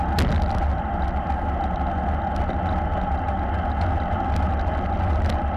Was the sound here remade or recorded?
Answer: recorded